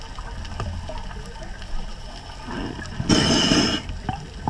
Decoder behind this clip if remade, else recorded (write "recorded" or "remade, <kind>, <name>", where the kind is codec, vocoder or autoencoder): recorded